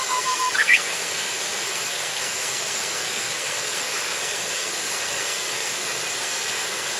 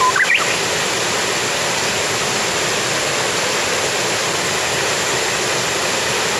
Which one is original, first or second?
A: second